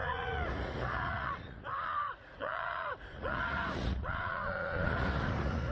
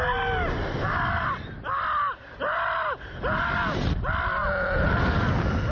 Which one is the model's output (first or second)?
first